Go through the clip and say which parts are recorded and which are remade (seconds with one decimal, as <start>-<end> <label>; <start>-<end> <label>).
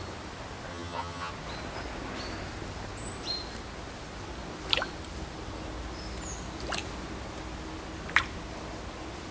0.0-0.7 recorded; 0.7-1.3 remade; 1.3-9.3 recorded